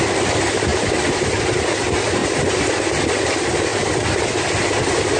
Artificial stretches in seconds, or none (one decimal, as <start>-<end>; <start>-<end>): none